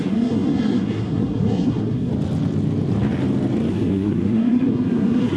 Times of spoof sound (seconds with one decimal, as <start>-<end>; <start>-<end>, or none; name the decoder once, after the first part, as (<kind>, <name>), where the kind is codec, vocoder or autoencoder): 0.0-2.1 (codec, SNAC); 3.7-5.4